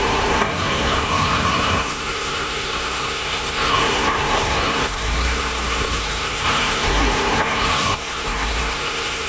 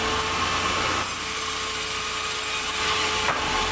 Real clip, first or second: second